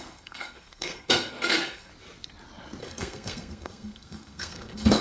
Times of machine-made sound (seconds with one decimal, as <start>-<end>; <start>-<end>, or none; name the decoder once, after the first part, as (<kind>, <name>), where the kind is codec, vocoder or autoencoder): 0.0-1.9 (codec, SNAC); 2.8-5.0